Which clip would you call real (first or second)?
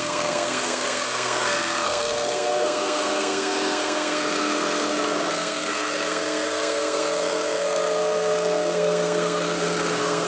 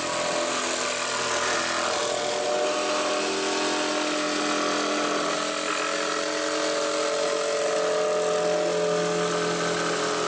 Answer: second